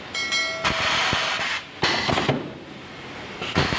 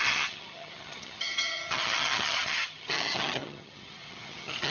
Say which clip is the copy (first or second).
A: second